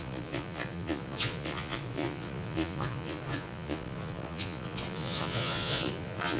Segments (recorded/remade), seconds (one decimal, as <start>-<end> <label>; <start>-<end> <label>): 0.0-6.4 remade